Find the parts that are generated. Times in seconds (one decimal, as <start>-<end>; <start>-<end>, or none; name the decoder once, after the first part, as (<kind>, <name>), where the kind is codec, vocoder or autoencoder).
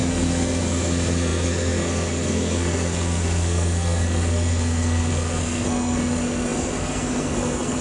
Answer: 0.0-7.8 (codec, SNAC)